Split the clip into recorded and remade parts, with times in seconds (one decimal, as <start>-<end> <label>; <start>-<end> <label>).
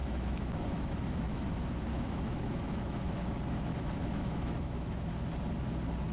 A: 0.0-1.4 remade; 1.4-1.9 recorded; 1.9-3.3 remade; 3.3-3.7 recorded; 3.7-5.1 remade; 5.1-6.1 recorded